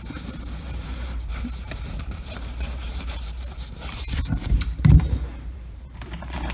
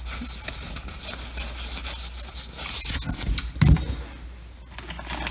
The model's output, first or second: first